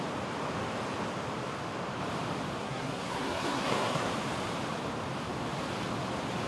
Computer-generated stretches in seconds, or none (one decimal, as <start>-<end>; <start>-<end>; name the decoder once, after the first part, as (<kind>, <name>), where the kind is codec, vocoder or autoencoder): 2.6-4.1 (codec, SNAC)